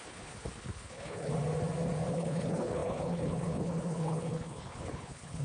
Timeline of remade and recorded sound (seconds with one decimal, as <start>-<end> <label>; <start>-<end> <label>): 0.0-1.3 remade; 1.3-2.1 recorded; 2.1-5.4 remade